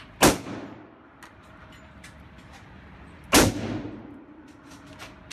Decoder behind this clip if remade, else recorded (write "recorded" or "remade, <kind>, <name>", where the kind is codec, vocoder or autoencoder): recorded